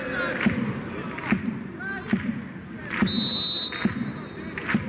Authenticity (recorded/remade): recorded